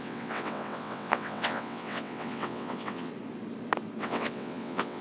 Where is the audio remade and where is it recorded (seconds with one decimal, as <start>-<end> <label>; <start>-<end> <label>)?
0.0-3.1 remade; 3.1-4.0 recorded; 4.0-5.0 remade